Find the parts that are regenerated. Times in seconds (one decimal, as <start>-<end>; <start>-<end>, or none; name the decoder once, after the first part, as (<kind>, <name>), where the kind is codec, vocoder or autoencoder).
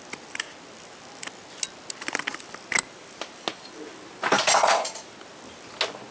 none